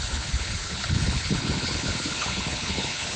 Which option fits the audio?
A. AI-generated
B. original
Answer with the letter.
A